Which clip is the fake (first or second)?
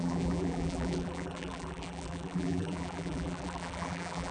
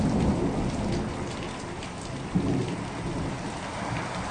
first